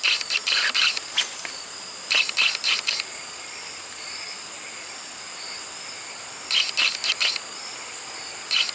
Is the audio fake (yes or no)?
no